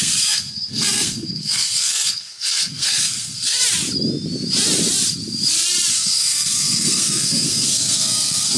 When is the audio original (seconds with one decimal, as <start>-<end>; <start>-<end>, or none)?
3.6-5.9